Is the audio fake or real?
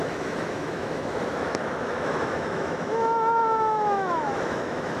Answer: fake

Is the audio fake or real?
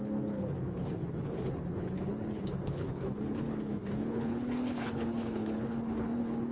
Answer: fake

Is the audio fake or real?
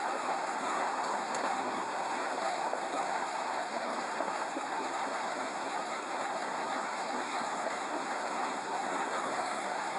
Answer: fake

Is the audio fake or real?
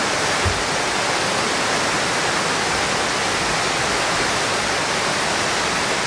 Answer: real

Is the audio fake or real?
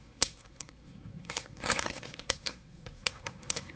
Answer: fake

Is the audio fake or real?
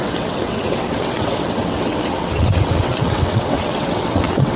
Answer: fake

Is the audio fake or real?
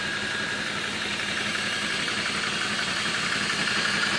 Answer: real